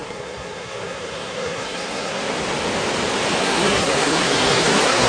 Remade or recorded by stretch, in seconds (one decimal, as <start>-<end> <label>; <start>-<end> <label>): 0.0-2.2 remade; 2.2-3.4 recorded; 3.4-5.1 remade